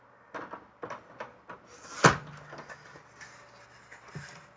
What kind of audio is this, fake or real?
real